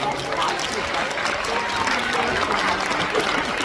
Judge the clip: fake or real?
real